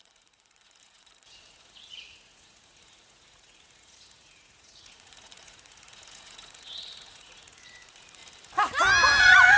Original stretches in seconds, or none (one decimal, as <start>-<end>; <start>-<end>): 8.2-9.2